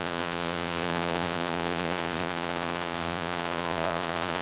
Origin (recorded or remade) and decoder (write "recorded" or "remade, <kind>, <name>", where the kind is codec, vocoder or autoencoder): remade, vocoder, Vocos